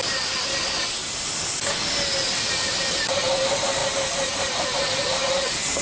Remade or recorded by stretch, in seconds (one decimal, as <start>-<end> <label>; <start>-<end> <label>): 0.0-5.8 recorded